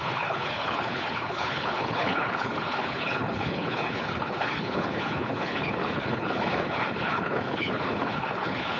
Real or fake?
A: fake